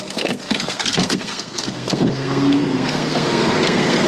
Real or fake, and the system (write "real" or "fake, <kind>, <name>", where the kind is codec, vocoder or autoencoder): fake, codec, SNAC